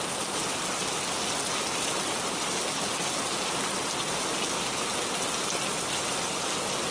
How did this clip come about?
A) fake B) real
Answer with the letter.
B